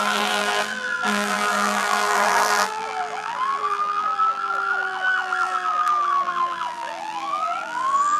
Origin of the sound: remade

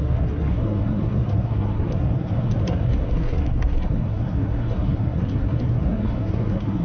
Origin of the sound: remade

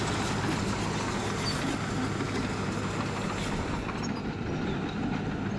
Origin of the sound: recorded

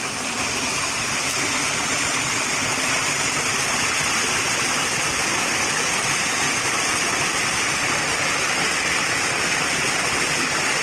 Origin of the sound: recorded